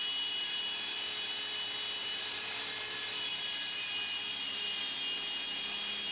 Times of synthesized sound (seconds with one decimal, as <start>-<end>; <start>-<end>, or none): 0.0-0.6; 2.0-2.6; 3.3-4.8